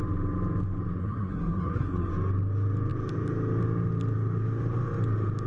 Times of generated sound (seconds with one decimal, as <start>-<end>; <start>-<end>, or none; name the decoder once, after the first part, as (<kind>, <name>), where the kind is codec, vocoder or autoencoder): 1.0-2.1 (codec, SNAC)